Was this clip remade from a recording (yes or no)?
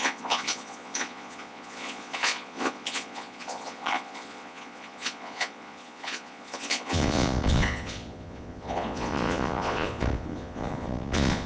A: yes